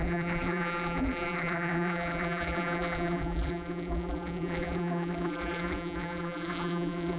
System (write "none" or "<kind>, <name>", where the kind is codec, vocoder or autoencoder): vocoder, BigVGAN v2